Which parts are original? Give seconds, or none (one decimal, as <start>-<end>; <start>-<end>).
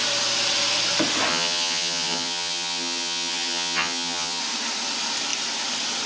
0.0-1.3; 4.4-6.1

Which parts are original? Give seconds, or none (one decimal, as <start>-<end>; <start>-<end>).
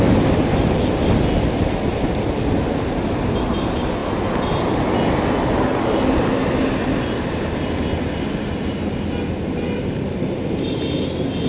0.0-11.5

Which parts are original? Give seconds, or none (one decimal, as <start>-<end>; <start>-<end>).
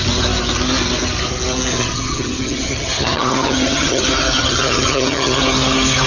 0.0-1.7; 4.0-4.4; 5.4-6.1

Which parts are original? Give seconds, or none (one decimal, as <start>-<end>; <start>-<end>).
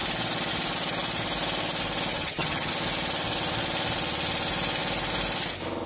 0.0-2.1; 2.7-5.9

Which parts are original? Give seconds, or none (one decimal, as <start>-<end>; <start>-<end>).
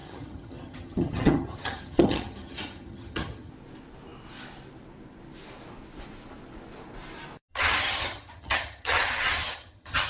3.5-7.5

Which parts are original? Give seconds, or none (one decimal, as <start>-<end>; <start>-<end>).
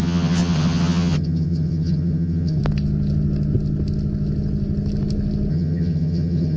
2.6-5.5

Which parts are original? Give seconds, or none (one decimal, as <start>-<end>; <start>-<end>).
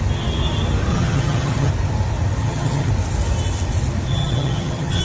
0.0-0.9; 1.7-2.4; 2.9-4.1